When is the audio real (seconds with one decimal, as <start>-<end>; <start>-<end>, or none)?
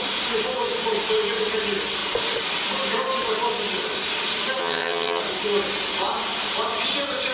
0.0-4.6; 5.2-7.3